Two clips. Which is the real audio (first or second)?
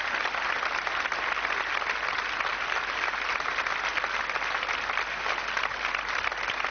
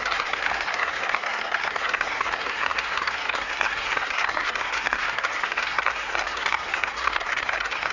first